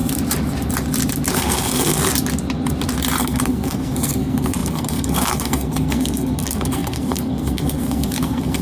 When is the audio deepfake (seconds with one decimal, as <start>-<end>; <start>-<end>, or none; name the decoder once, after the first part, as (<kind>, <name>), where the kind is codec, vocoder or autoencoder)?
1.3-2.0 (codec, SNAC); 3.2-8.6

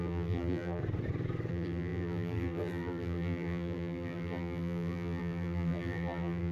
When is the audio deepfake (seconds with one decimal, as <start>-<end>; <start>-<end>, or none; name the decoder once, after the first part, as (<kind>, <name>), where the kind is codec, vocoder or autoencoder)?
0.0-0.8 (vocoder, BigVGAN v2); 1.5-6.5

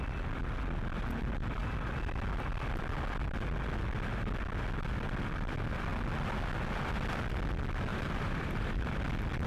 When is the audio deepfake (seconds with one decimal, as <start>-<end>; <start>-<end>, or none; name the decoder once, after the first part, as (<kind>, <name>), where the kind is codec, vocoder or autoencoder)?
7.9-9.0 (vocoder, BigVGAN v2)